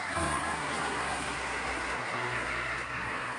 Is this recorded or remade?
remade